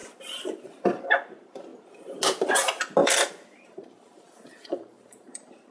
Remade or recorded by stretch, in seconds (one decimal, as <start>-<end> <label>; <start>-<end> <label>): 0.0-1.0 remade; 1.0-3.0 recorded; 3.0-5.7 remade